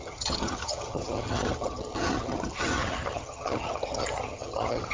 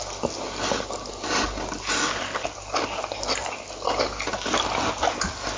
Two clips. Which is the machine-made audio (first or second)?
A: first